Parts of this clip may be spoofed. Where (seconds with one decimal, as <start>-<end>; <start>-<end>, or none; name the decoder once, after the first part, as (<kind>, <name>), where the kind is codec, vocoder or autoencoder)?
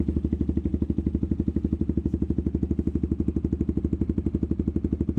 none